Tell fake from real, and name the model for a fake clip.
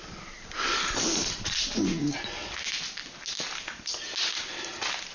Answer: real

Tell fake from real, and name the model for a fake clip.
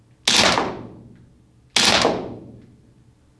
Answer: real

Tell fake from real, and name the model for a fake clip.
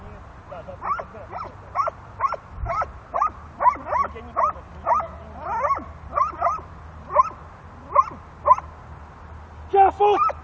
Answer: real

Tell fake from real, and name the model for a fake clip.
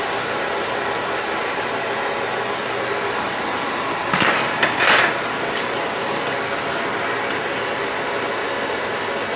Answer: real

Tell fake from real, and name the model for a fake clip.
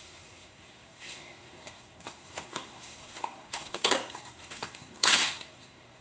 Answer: fake, codec, SNAC